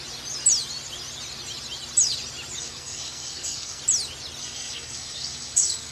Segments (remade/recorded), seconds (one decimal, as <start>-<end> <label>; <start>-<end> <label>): 0.0-2.6 recorded; 2.6-3.8 remade; 3.8-4.4 recorded; 4.4-5.9 remade